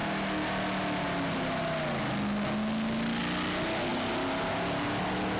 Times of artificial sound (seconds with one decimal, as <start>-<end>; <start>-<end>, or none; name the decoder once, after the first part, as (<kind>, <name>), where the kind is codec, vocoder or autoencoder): none